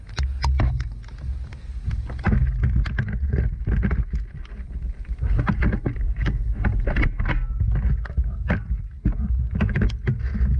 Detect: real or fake real